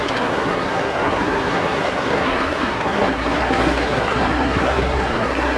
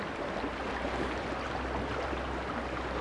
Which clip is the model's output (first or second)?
first